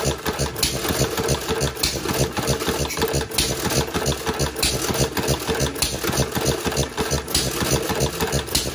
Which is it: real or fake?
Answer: real